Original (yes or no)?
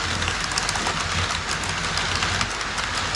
yes